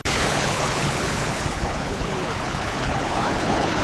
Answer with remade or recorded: remade